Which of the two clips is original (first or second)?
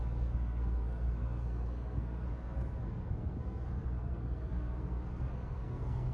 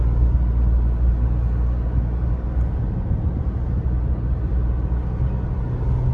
second